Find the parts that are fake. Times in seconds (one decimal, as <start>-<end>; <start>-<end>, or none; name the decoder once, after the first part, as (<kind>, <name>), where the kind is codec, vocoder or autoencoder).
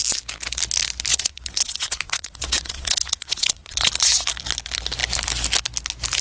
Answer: 1.1-3.9 (vocoder, WaveNeXt)